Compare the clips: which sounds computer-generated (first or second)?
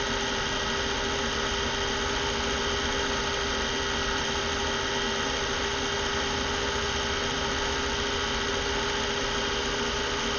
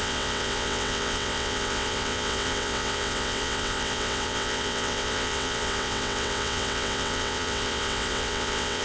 second